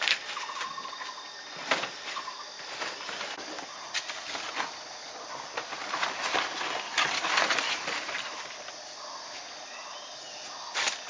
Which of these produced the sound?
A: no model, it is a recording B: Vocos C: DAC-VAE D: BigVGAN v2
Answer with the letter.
A